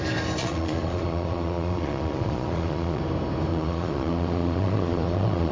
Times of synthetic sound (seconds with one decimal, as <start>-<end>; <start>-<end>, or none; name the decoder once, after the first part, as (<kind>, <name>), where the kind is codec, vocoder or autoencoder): 0.4-3.0 (vocoder, Vocos); 3.5-5.5